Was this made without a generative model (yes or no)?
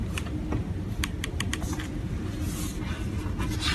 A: yes